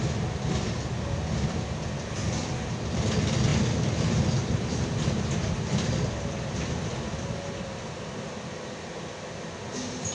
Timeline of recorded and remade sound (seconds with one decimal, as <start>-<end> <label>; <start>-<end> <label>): 0.0-10.1 recorded